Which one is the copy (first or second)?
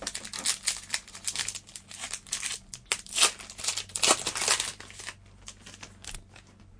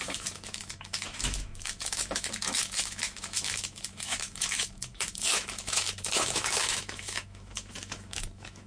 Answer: second